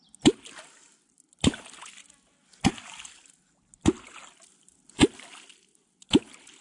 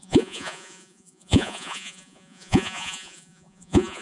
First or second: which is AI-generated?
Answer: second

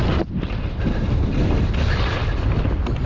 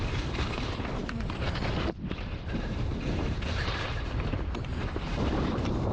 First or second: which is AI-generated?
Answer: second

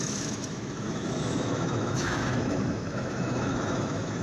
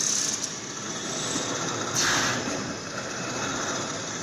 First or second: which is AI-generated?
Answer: first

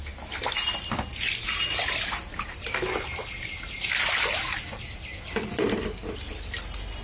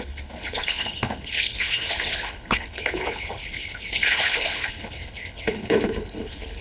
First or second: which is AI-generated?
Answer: second